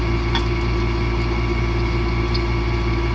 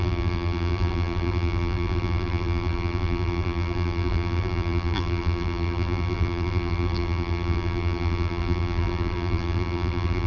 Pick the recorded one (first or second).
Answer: first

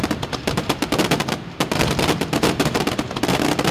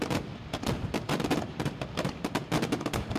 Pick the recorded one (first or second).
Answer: first